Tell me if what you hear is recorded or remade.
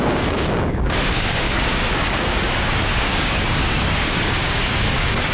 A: remade